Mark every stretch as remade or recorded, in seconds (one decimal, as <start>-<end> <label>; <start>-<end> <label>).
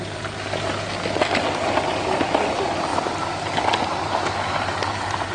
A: 0.0-5.3 recorded